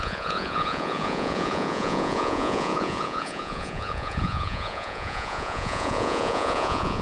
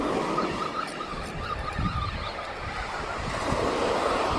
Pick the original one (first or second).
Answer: second